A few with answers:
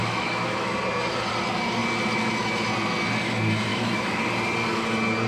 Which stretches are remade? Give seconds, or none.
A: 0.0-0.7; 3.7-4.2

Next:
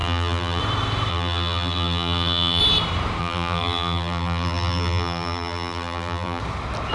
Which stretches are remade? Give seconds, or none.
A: 0.0-0.6; 1.1-2.6; 3.2-6.4

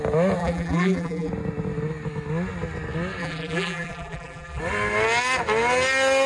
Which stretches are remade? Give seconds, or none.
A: 0.4-1.3; 3.2-4.6

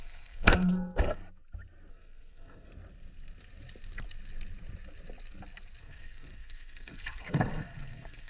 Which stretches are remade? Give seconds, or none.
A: 0.0-1.2; 1.9-2.7; 5.8-8.3

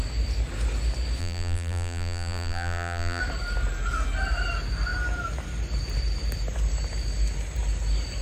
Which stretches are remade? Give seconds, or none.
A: 1.2-3.2

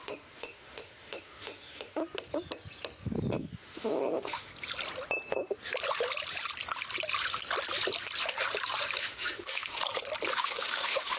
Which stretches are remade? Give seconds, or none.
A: 0.0-2.0; 3.4-4.5; 9.0-9.8; 10.3-11.2